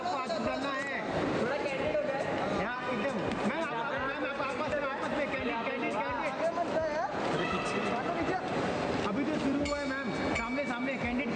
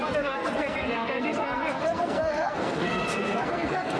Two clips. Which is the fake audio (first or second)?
second